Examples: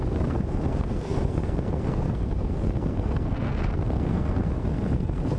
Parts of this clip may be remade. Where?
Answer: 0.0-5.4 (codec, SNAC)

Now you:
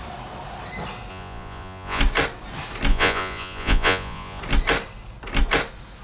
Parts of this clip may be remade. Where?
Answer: 1.1-2.0 (vocoder, Vocos); 2.9-4.4

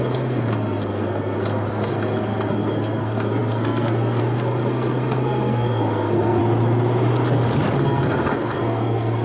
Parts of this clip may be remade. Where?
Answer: 0.0-6.4 (codec, SNAC); 7.8-9.2

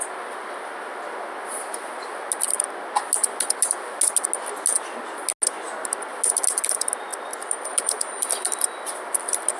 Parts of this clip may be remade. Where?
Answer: none

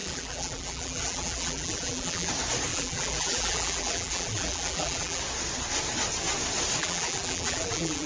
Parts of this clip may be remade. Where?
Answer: 0.0-2.3 (vocoder, BigVGAN v2); 2.7-5.2; 6.8-8.1